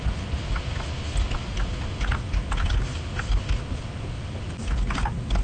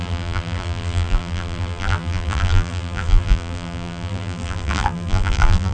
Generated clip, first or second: second